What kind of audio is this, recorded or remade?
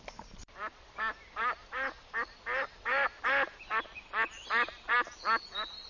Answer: recorded